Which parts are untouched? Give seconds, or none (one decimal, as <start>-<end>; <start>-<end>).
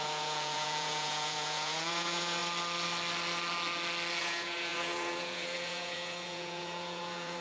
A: 2.4-4.2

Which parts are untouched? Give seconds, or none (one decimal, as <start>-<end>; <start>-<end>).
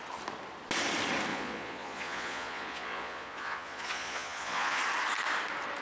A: 0.0-1.3; 4.8-5.8